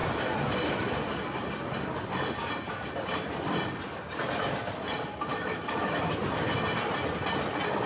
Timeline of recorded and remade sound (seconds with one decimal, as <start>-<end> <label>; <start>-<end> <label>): 0.0-5.3 recorded; 5.3-6.1 remade; 6.1-7.9 recorded